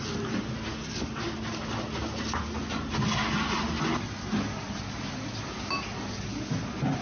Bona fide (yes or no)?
yes